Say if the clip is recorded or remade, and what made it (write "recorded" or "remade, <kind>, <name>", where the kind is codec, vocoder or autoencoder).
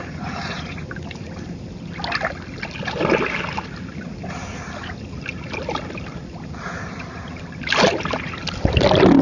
recorded